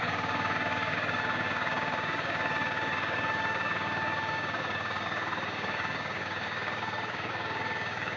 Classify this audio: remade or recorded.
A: remade